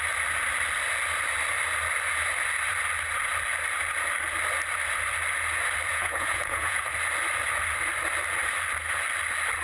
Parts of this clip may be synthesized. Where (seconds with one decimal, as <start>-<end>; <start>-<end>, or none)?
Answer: 5.9-6.8